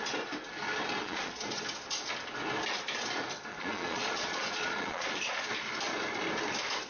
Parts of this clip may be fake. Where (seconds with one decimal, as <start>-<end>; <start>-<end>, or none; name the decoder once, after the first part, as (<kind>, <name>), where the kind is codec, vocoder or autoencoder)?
1.0-1.6 (vocoder, Vocos); 3.5-5.5